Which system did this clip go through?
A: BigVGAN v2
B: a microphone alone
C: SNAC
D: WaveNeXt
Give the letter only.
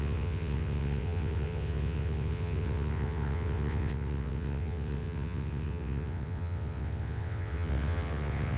D